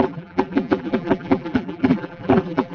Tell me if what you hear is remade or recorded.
remade